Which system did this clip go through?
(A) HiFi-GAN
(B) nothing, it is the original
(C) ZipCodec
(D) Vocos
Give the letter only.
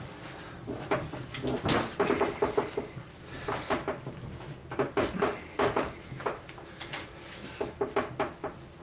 B